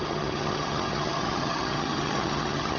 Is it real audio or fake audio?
fake